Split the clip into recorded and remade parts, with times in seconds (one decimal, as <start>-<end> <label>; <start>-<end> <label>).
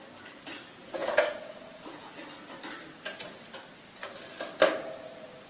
0.0-1.0 recorded; 1.0-2.1 remade; 2.1-5.5 recorded